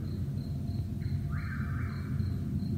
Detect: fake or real real